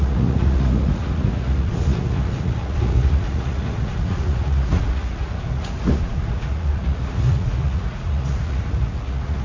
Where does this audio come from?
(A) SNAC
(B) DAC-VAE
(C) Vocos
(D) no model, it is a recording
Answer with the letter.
C